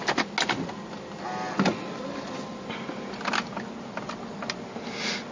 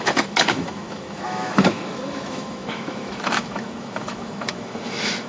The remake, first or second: second